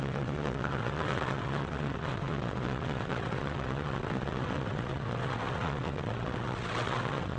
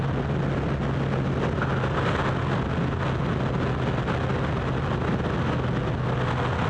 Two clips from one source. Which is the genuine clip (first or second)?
second